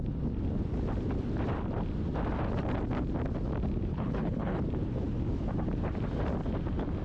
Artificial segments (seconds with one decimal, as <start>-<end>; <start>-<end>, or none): 3.9-4.6